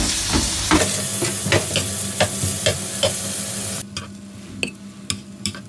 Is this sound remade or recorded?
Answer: recorded